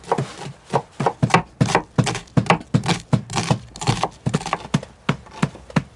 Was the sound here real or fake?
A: real